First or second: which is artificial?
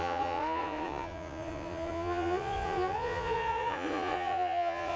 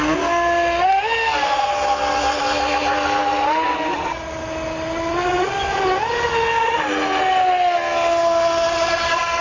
first